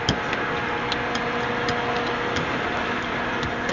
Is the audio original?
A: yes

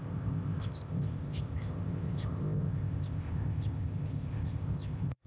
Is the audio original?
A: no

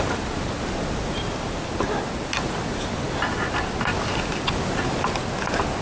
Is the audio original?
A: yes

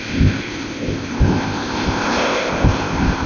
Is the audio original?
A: no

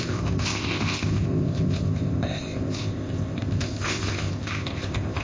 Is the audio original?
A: no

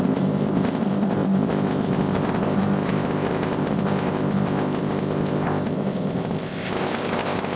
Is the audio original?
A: no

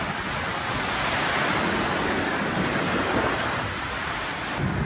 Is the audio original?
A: yes